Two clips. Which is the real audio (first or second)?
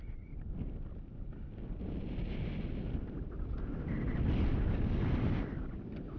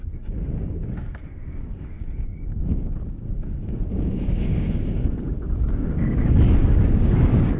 first